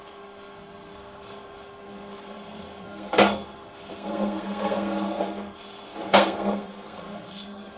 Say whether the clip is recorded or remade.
remade